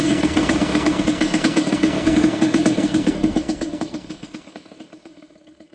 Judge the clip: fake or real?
fake